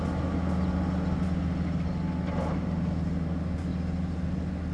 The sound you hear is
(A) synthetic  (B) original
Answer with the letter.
B